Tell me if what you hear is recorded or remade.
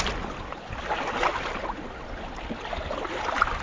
recorded